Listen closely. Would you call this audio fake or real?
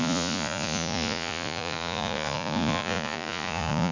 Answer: fake